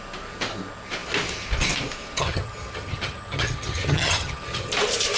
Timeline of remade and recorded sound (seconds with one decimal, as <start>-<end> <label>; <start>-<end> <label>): 0.0-2.2 recorded; 2.2-4.7 remade; 4.7-5.2 recorded